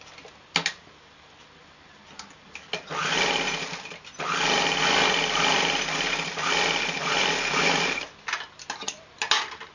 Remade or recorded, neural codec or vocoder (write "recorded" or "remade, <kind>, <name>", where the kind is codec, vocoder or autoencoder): recorded